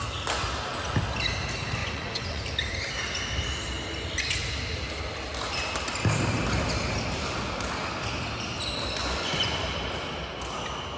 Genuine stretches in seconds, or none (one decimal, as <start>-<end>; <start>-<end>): 0.0-1.8; 2.4-9.0; 9.6-11.0